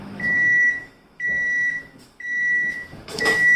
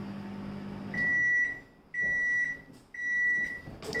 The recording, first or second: second